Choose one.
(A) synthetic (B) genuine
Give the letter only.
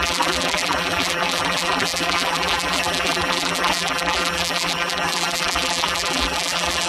A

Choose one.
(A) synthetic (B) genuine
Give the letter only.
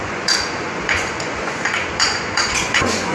A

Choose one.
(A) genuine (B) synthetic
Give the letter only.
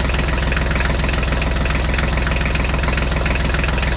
A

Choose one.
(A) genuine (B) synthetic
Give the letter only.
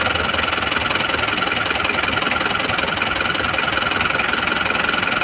A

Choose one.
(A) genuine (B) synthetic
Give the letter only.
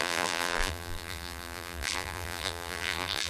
B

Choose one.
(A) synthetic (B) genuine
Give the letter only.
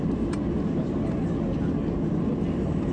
B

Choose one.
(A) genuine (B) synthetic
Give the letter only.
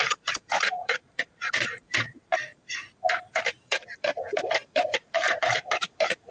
B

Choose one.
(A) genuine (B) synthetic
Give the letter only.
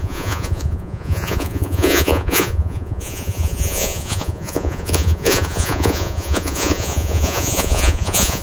B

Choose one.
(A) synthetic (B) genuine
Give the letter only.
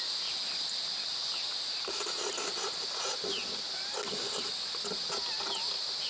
B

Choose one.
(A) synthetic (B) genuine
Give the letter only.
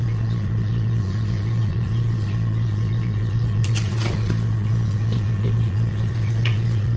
A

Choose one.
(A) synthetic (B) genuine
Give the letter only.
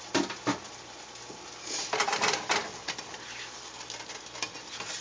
B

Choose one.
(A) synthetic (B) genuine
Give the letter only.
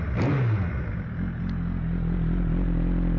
B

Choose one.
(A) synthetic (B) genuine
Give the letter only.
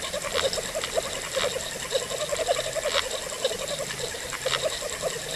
B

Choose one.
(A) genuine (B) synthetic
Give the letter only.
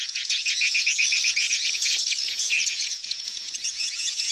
B